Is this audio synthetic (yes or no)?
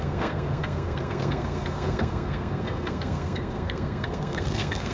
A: yes